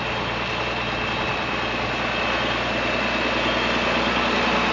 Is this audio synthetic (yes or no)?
no